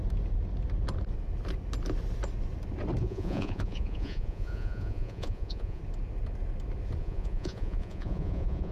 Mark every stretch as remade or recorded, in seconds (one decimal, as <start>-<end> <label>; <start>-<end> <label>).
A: 0.0-3.0 recorded; 3.0-5.8 remade; 5.8-7.0 recorded; 7.0-8.7 remade